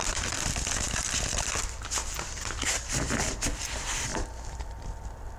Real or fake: fake